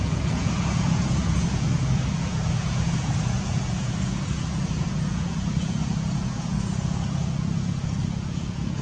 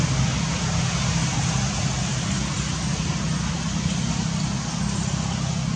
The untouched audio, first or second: second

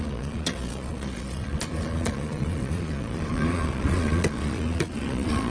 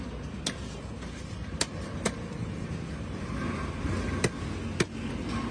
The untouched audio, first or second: second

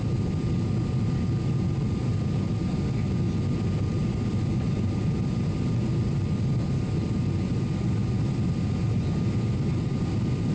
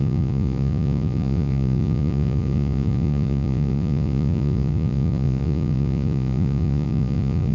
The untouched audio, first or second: first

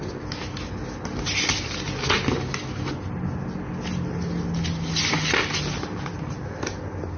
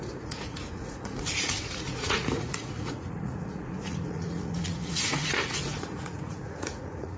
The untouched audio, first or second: first